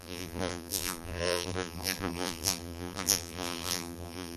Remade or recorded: remade